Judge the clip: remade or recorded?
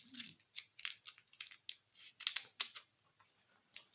recorded